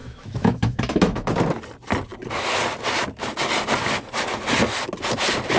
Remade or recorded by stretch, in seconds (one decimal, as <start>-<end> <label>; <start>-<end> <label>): 0.0-1.3 remade; 1.3-5.6 recorded

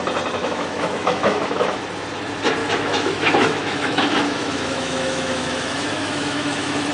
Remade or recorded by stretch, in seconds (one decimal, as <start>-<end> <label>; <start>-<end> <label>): 0.0-0.4 recorded; 0.4-1.8 remade; 1.8-2.6 recorded; 2.6-6.9 remade

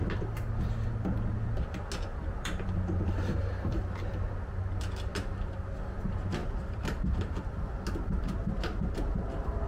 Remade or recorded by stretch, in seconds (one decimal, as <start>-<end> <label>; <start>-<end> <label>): 0.0-2.1 recorded; 2.1-3.1 remade; 3.1-6.4 recorded; 6.4-7.2 remade; 7.2-9.7 recorded

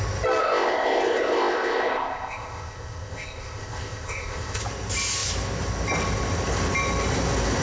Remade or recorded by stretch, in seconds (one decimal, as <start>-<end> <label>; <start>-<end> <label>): 0.0-0.4 recorded; 0.4-4.6 remade; 4.6-7.6 recorded

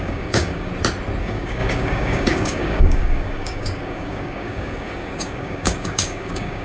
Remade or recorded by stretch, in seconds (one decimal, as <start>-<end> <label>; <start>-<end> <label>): 0.0-0.7 remade; 0.7-1.2 recorded; 1.2-6.6 remade

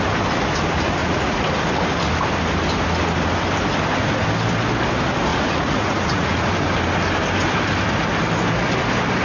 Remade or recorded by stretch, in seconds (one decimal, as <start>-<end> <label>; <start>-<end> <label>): 0.0-1.0 recorded; 1.0-1.5 remade; 1.5-5.3 recorded; 5.3-6.5 remade; 6.5-9.2 recorded

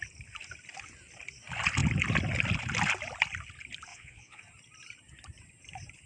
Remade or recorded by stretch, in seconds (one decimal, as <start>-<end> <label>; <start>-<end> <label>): 0.0-3.9 recorded; 3.9-4.4 remade; 4.4-6.1 recorded

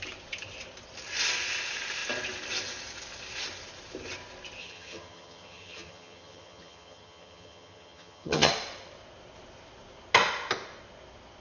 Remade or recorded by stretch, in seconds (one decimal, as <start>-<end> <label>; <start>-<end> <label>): 0.0-4.6 recorded; 4.6-8.5 remade; 8.5-11.4 recorded